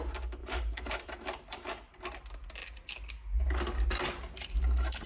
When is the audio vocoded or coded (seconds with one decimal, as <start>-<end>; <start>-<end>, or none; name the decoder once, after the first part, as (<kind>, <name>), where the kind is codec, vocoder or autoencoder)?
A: 0.4-2.0 (vocoder, BigVGAN v2)